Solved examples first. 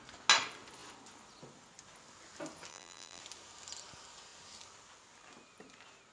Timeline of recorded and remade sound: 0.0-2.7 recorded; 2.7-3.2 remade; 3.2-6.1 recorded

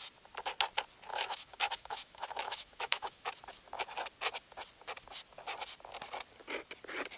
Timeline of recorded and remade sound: 0.0-1.1 recorded; 1.1-3.3 remade; 3.3-7.2 recorded

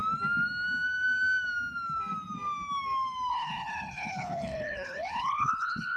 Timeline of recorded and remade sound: 0.0-3.3 recorded; 3.3-6.0 remade

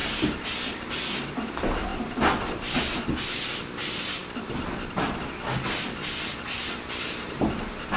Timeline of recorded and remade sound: 0.0-8.0 recorded